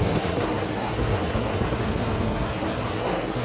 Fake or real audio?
fake